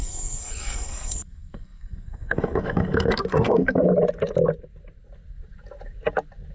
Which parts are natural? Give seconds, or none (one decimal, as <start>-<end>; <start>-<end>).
3.9-6.5